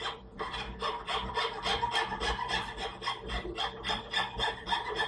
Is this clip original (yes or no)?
no